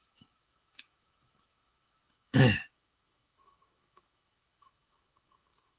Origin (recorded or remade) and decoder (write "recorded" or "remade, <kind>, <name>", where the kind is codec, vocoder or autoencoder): remade, autoencoder, DAC-VAE